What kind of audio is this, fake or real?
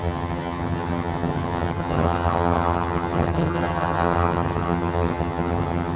fake